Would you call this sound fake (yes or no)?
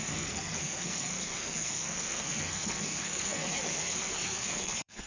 yes